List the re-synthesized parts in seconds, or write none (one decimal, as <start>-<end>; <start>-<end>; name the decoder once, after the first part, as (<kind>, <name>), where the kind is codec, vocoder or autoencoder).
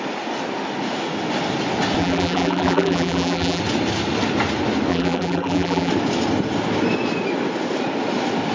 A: 2.0-3.6 (vocoder, BigVGAN v2); 4.9-5.9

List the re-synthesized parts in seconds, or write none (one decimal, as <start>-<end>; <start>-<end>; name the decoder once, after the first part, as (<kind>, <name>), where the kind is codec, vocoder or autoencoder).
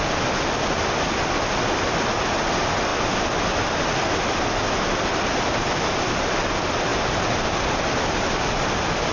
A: 6.9-8.4 (vocoder, BigVGAN v2)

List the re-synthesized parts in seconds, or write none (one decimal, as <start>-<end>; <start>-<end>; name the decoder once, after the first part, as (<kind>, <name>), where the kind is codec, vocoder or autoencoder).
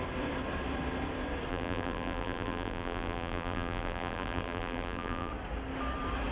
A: 1.5-5.3 (vocoder, BigVGAN v2)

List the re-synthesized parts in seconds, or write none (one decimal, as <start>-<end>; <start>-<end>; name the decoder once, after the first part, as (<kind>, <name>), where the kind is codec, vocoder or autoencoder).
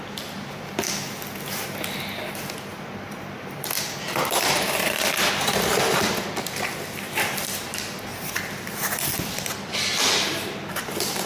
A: 2.7-3.8 (vocoder, BigVGAN v2); 4.8-5.3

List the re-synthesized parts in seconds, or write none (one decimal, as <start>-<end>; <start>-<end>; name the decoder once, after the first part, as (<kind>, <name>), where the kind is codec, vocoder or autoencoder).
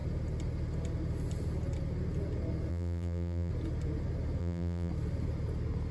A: 2.7-3.5 (vocoder, BigVGAN v2); 4.4-4.9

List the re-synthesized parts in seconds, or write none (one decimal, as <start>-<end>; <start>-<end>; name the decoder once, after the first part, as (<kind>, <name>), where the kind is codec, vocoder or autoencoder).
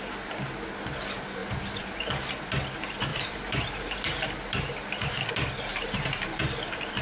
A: 3.1-5.3 (vocoder, BigVGAN v2); 5.7-6.4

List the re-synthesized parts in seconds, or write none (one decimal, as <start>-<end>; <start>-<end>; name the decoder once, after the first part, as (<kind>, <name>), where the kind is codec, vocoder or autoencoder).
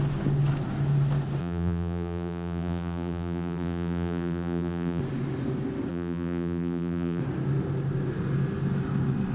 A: 1.4-5.0 (vocoder, BigVGAN v2); 5.9-7.2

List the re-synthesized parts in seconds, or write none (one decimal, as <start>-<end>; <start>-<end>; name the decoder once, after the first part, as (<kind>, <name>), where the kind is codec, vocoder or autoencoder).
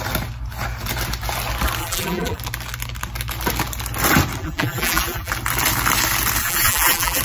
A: 1.8-2.4 (vocoder, BigVGAN v2); 4.4-5.3; 6.4-7.2